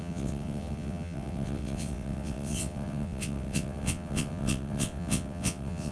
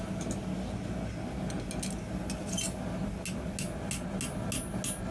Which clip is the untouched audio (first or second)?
second